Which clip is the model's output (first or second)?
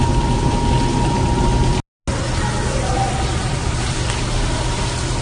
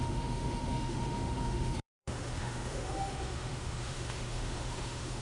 second